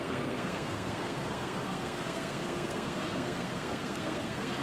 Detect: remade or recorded remade